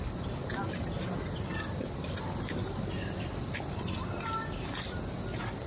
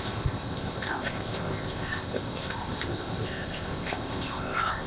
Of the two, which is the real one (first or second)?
first